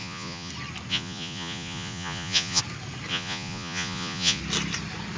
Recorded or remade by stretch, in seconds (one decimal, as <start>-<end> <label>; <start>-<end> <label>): 0.0-0.5 remade; 0.5-0.9 recorded; 0.9-2.6 remade; 2.6-3.1 recorded; 3.1-4.4 remade; 4.4-5.2 recorded